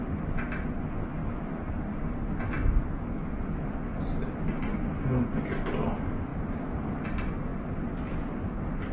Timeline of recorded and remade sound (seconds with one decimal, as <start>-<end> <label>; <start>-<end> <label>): 0.0-6.3 recorded; 6.3-7.0 remade; 7.0-8.9 recorded

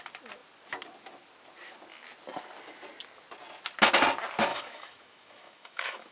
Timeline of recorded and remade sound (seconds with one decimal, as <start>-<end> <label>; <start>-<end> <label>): 0.0-4.5 recorded; 4.5-6.1 remade

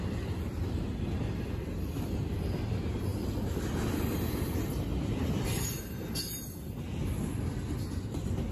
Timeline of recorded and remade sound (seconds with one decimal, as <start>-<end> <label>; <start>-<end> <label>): 0.0-8.5 recorded

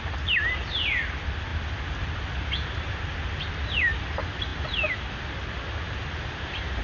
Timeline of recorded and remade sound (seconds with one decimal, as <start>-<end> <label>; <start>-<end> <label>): 0.0-6.8 recorded

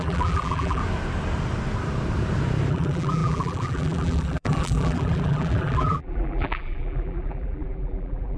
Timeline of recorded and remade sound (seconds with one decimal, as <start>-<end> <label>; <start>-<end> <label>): 0.0-0.8 remade; 0.8-2.7 recorded; 2.7-8.4 remade

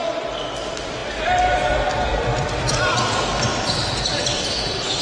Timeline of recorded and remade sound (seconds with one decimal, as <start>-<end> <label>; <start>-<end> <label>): 0.0-0.6 recorded; 0.6-5.0 remade

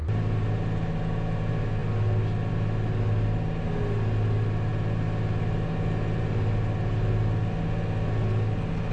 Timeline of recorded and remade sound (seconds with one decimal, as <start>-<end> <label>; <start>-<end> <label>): 0.0-8.9 recorded